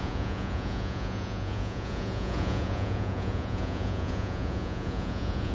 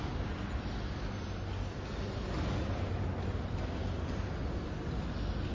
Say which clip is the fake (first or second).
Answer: first